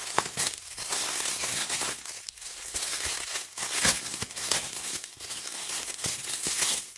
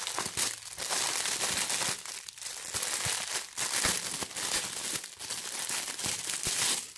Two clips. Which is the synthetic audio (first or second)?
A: first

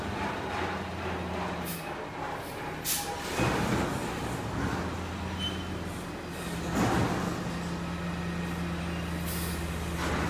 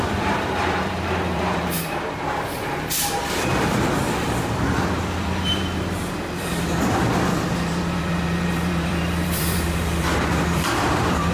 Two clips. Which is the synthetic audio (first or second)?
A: second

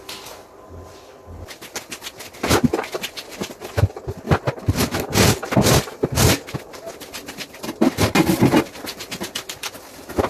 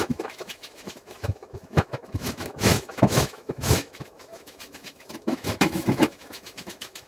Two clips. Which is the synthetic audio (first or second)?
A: second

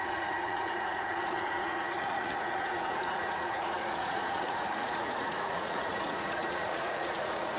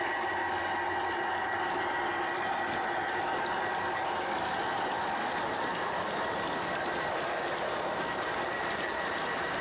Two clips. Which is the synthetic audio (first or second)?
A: first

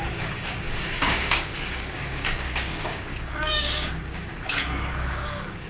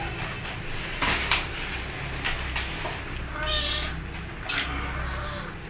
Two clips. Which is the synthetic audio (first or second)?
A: first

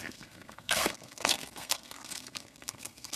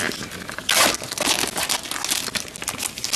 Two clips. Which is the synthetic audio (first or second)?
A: first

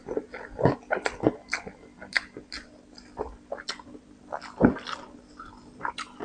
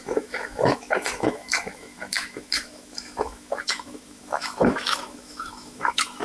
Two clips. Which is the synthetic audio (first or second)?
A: second